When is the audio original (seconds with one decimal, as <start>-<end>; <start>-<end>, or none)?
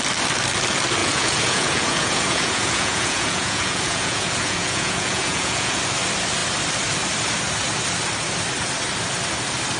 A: 0.0-1.0; 5.8-9.8